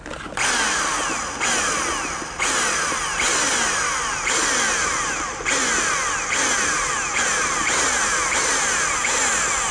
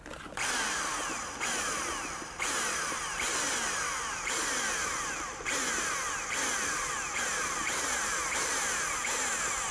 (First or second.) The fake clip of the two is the second